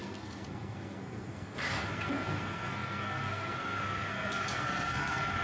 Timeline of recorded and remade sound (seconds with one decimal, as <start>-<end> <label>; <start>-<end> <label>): 0.0-5.4 remade